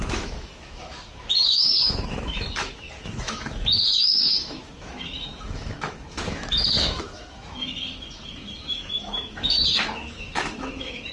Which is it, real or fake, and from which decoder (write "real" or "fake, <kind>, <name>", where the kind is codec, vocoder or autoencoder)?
fake, autoencoder, DAC-VAE